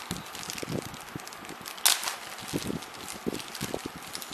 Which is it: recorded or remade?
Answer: recorded